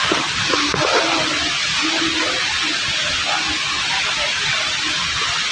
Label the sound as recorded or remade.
recorded